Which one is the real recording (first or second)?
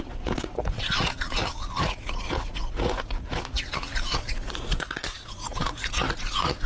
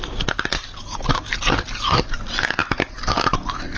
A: second